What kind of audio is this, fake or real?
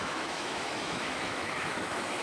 fake